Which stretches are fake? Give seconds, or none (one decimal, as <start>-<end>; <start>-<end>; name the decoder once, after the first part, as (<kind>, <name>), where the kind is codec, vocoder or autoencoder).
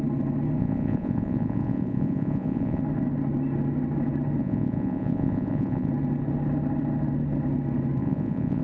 0.6-2.8 (vocoder, Vocos); 4.4-5.9; 8.0-8.6